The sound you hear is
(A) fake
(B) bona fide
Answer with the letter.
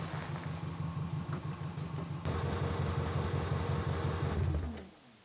B